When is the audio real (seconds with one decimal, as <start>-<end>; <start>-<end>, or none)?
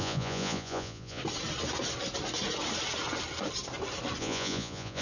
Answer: 1.2-4.2